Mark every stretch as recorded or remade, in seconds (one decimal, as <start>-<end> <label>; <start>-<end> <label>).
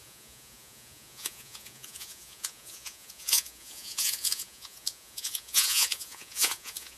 0.0-7.0 remade